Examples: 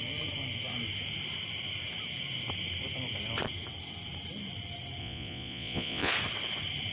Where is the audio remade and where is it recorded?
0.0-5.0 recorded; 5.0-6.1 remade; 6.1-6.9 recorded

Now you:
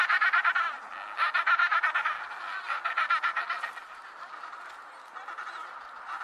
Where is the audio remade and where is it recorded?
0.0-6.2 recorded

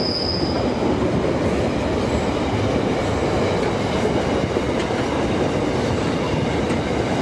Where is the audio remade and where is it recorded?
0.0-7.2 recorded

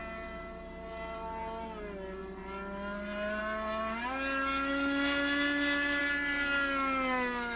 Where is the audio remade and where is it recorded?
0.0-7.6 recorded

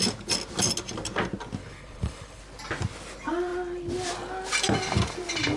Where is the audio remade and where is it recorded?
0.0-1.6 recorded; 1.6-2.4 remade; 2.4-5.6 recorded

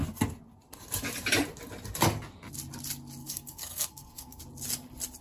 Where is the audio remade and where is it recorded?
0.0-3.2 recorded; 3.2-4.4 remade; 4.4-5.2 recorded